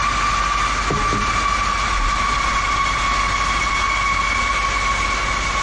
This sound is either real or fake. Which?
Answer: real